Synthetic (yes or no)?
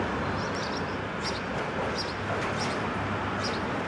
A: no